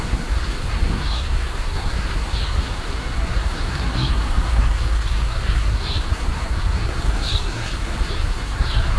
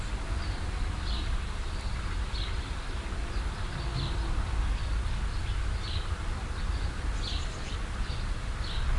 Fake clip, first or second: first